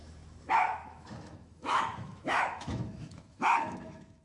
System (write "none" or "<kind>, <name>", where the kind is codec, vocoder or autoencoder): autoencoder, DAC-VAE